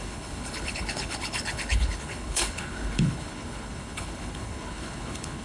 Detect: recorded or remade remade